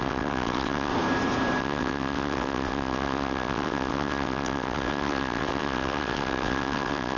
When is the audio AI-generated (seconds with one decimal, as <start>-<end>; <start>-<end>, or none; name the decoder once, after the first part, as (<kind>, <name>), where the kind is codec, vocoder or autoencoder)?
0.0-0.9 (vocoder, WaveNeXt); 1.6-7.2